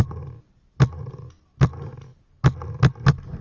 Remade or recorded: recorded